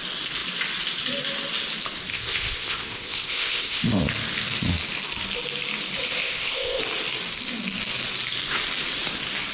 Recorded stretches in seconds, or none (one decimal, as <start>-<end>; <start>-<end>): 0.0-2.1; 4.0-6.2; 6.8-9.5